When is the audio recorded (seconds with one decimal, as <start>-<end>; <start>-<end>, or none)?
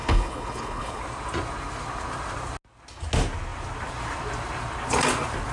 1.0-5.5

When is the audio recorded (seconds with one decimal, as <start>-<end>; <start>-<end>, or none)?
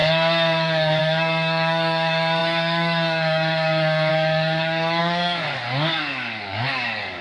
none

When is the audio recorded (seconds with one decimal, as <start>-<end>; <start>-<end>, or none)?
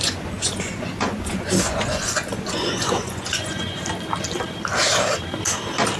3.8-6.0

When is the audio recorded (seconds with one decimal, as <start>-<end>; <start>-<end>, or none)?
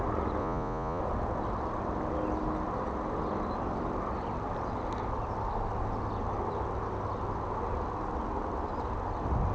0.0-0.4; 1.0-9.5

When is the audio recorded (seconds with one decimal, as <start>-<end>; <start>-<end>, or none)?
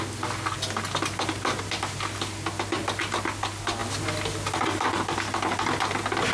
0.0-6.3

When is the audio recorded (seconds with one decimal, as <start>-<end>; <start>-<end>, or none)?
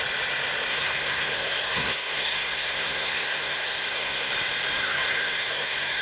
0.0-0.7; 4.3-4.8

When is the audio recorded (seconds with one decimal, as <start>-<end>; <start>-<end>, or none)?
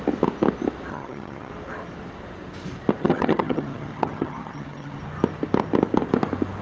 0.0-0.9; 1.5-3.0; 5.0-6.6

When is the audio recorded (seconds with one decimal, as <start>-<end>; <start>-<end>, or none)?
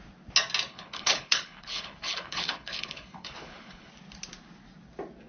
0.0-0.7; 3.9-5.3